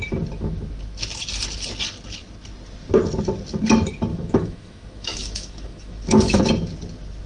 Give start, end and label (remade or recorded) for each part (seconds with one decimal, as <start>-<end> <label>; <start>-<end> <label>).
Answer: 0.0-4.1 recorded; 4.1-6.4 remade; 6.4-7.3 recorded